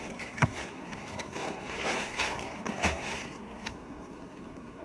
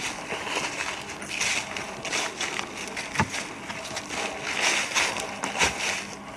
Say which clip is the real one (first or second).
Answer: second